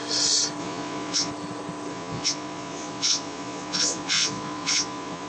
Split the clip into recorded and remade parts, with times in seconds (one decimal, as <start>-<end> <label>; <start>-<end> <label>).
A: 0.0-0.6 recorded; 0.6-1.3 remade; 1.3-1.9 recorded; 1.9-5.3 remade